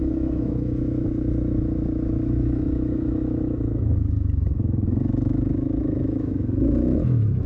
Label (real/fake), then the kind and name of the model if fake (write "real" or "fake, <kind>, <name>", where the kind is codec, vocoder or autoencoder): fake, autoencoder, DAC-VAE